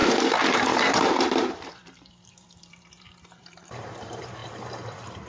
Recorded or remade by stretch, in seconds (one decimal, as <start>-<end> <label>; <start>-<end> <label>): 0.0-5.3 remade